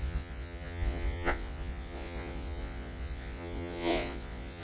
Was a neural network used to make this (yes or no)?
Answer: yes